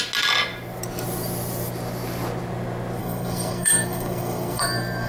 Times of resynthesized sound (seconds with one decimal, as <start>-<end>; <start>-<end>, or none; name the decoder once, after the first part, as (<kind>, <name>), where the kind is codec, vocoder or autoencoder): 3.0-5.1 (codec, SNAC)